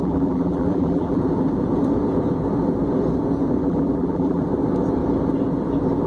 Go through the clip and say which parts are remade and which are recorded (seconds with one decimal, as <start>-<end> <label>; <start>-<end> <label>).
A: 0.0-1.2 remade; 1.2-3.6 recorded; 3.6-4.4 remade; 4.4-6.1 recorded